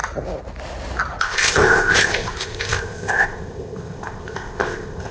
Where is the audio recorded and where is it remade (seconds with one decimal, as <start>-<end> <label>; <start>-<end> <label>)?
0.0-1.2 recorded; 1.2-5.1 remade